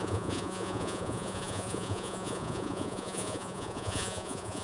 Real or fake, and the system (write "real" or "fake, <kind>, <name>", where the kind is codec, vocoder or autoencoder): fake, vocoder, Vocos